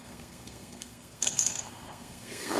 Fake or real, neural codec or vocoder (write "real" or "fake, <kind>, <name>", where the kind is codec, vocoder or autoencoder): fake, codec, SNAC